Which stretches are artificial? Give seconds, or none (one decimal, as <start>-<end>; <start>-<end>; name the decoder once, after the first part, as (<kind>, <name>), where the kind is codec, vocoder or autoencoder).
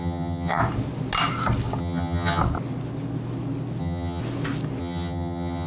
0.0-0.6 (vocoder, HiFi-GAN); 1.8-2.4; 3.8-4.2; 4.8-5.7